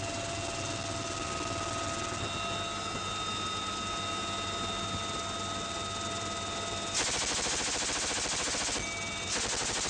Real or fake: real